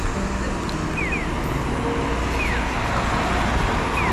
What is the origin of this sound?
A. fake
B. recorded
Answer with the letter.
B